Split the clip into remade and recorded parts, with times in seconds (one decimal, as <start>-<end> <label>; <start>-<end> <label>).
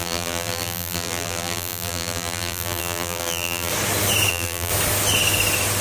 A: 0.0-3.7 remade; 3.7-4.3 recorded; 4.3-4.7 remade; 4.7-5.8 recorded